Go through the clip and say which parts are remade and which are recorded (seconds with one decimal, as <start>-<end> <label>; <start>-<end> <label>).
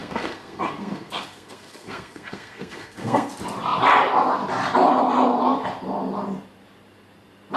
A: 0.0-3.3 remade; 3.3-7.6 recorded